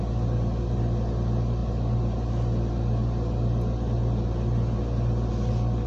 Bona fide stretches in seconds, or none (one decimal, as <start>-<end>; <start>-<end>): 0.0-5.9